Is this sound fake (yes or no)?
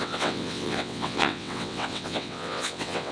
yes